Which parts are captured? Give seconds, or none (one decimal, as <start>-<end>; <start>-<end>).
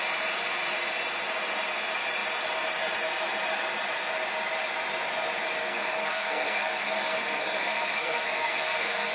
0.0-5.6